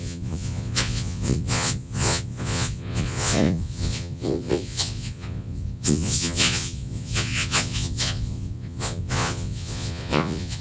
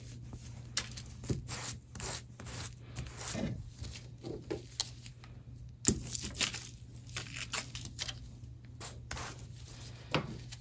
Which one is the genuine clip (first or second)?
second